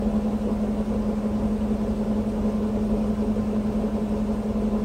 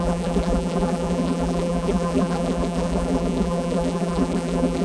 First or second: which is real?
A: first